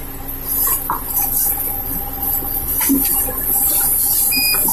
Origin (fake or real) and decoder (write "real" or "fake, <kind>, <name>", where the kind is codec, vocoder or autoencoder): real